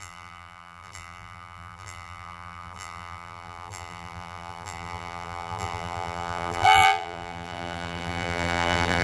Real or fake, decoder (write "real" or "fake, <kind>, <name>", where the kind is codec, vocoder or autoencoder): fake, vocoder, BigVGAN v2